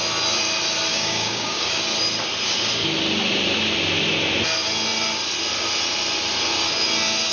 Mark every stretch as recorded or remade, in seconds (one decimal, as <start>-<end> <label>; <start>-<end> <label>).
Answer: 0.0-0.9 recorded; 0.9-1.8 remade; 1.8-7.3 recorded